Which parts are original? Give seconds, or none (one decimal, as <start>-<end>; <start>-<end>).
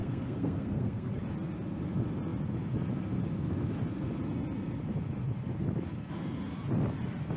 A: 1.2-7.4